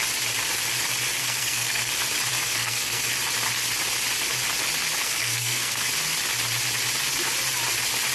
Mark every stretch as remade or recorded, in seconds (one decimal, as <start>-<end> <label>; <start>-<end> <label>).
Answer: 0.0-1.2 recorded; 1.2-1.9 remade; 1.9-2.3 recorded; 2.3-3.1 remade; 3.1-5.0 recorded; 5.0-5.9 remade; 5.9-8.1 recorded